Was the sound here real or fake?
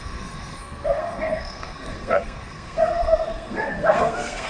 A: fake